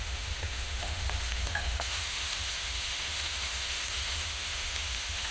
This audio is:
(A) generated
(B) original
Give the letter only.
A